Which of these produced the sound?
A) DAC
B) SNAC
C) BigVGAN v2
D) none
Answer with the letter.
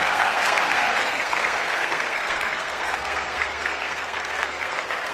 B